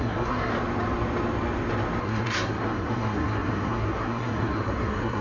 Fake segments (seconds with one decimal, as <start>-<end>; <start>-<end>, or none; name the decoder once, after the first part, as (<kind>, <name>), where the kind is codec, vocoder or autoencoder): 0.0-0.5 (codec, SNAC); 2.0-5.2